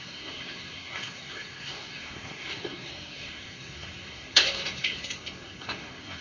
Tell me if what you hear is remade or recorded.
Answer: remade